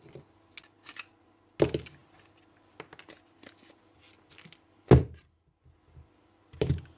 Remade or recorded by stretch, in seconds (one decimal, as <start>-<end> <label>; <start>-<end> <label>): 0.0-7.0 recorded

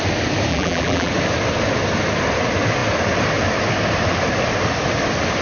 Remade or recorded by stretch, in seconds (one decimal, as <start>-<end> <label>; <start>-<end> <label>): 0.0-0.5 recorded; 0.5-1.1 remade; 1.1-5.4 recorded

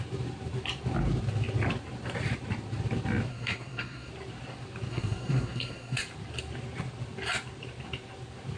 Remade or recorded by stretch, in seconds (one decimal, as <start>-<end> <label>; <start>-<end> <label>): 0.0-3.3 recorded; 3.3-4.1 remade; 4.1-4.9 recorded; 4.9-6.0 remade; 6.0-8.6 recorded

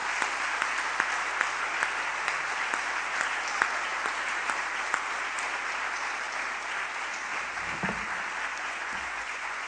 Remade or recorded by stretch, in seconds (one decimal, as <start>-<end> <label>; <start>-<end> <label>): 0.0-8.5 recorded; 8.5-9.7 remade

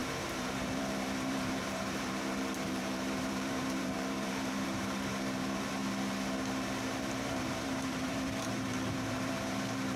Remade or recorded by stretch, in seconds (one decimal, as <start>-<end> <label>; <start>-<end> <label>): 0.0-5.8 remade; 5.8-7.0 recorded; 7.0-10.0 remade

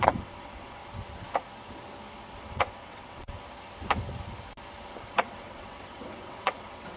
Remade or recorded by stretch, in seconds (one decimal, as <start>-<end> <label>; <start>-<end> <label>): 0.0-0.8 remade; 0.8-2.4 recorded; 2.4-3.4 remade; 3.4-5.1 recorded; 5.1-7.0 remade

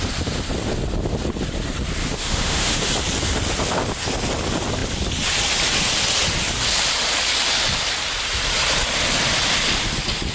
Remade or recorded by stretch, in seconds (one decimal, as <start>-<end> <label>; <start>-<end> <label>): 0.0-2.0 recorded; 2.0-2.9 remade; 2.9-10.3 recorded